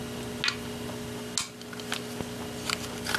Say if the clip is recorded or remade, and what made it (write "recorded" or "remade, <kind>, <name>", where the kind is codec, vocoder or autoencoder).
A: recorded